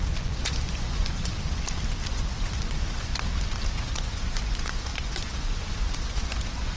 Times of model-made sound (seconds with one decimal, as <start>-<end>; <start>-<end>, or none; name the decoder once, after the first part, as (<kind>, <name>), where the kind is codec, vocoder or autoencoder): 0.0-1.3 (vocoder, Vocos); 2.1-3.1; 3.7-6.8